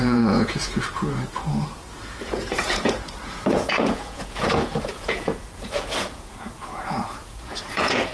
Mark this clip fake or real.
fake